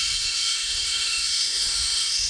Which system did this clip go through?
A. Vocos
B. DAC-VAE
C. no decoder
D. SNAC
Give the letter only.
B